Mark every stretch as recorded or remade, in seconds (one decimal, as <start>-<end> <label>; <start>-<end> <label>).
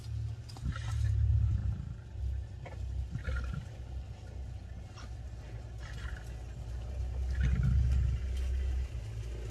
0.0-9.5 recorded